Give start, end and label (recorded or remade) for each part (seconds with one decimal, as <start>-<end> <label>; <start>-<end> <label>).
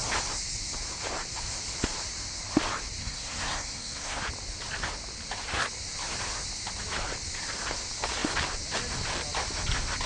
0.0-3.0 recorded; 3.0-4.2 remade; 4.2-10.1 recorded